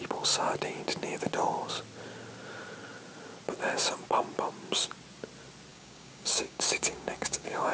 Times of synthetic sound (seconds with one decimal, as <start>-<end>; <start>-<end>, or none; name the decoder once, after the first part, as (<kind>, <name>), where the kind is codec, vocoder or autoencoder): 5.7-7.7 (codec, DAC)